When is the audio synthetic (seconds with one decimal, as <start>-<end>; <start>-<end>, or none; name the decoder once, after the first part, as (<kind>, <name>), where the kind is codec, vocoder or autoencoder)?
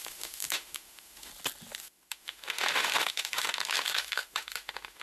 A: 0.0-1.3 (autoencoder, DAC-VAE); 1.8-5.0